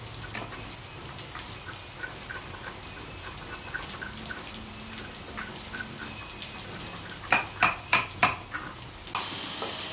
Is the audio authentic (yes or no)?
yes